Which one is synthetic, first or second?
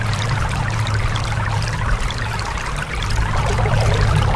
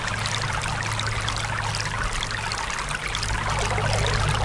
first